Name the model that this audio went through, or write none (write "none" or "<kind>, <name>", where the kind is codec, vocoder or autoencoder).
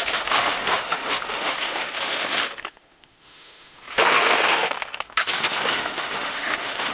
autoencoder, DAC-VAE